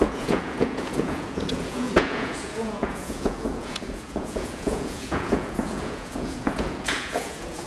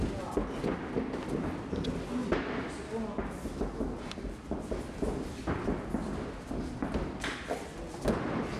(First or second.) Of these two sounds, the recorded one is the second